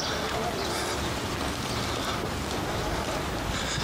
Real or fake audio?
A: real